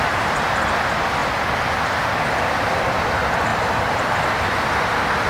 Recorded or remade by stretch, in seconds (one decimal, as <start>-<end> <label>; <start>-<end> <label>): 0.0-5.3 recorded